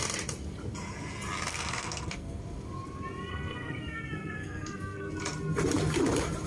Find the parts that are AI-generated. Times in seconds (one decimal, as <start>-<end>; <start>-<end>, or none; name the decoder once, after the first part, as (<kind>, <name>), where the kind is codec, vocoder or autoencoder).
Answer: 1.5-2.4 (codec, SNAC); 3.3-5.1